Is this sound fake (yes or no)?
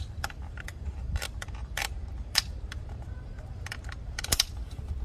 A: yes